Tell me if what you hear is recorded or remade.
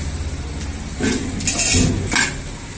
recorded